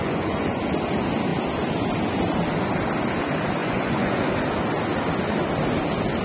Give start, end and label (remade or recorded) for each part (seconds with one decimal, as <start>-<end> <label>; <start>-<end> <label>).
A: 0.0-0.6 remade; 0.6-3.6 recorded; 3.6-4.3 remade; 4.3-6.2 recorded